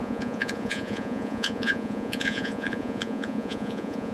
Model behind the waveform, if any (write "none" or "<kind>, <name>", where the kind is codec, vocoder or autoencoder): vocoder, Vocos